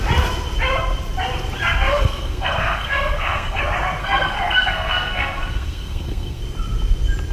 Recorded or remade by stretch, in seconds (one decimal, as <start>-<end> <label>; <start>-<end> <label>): 0.0-1.9 recorded; 1.9-3.6 remade; 3.6-4.0 recorded; 4.0-6.4 remade; 6.4-7.3 recorded